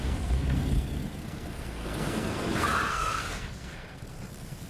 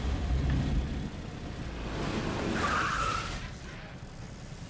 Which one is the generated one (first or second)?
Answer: first